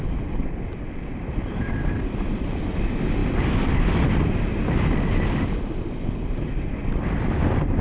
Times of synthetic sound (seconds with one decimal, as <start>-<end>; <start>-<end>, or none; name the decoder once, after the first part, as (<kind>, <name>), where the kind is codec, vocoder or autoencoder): none